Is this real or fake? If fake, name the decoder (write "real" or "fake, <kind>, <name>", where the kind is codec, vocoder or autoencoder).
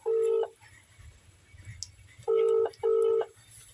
real